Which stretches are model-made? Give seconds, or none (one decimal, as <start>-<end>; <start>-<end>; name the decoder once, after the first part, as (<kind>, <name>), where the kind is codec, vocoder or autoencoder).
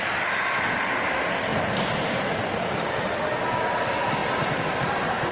none